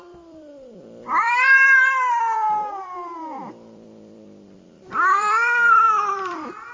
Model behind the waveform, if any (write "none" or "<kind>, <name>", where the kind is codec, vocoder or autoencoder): vocoder, BigVGAN v2